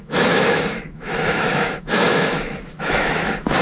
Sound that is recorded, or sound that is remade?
remade